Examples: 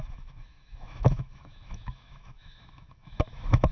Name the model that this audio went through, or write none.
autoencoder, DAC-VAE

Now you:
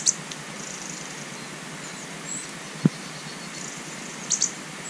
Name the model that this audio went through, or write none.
none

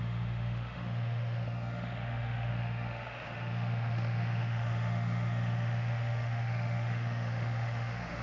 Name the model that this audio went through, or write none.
autoencoder, DAC-VAE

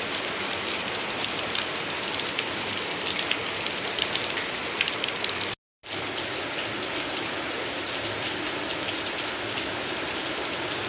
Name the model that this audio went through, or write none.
none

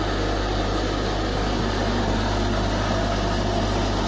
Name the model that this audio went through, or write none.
none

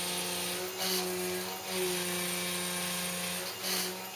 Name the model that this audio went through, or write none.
none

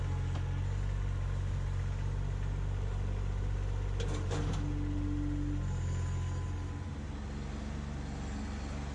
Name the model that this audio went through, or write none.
none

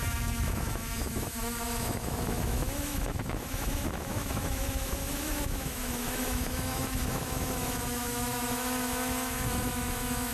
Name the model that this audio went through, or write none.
autoencoder, DAC-VAE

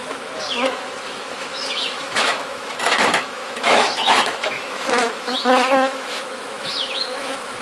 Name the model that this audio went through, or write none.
autoencoder, DAC-VAE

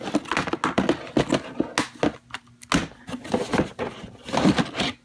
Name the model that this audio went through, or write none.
none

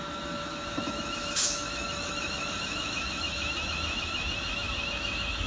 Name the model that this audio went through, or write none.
autoencoder, DAC-VAE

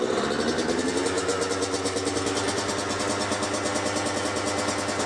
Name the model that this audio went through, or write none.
none